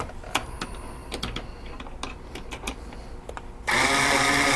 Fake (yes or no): no